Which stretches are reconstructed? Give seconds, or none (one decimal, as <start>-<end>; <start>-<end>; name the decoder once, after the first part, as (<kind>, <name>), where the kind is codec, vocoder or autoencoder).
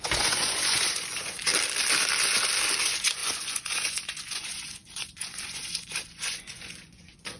0.0-1.5 (vocoder, Vocos); 2.8-7.4